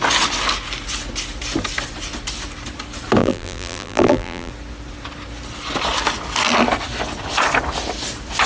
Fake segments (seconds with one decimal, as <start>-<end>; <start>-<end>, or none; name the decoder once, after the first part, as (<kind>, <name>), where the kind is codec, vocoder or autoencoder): 3.2-4.5 (vocoder, BigVGAN v2)